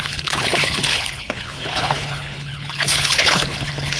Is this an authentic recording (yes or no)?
no